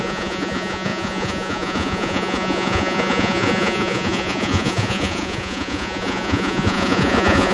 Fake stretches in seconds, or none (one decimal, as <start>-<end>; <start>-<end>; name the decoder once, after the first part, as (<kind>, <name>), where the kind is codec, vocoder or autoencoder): 0.0-7.5 (vocoder, Vocos)